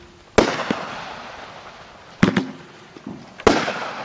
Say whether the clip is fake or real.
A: real